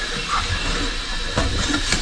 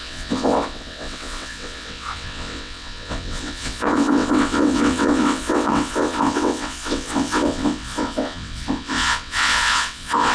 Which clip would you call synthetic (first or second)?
second